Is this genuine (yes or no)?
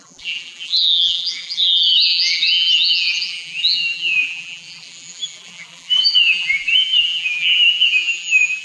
no